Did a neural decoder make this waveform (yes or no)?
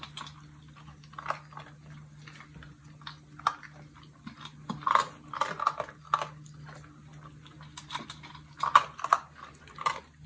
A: no